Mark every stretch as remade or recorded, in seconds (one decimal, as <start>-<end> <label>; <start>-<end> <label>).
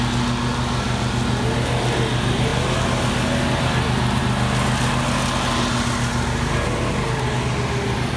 0.0-8.2 recorded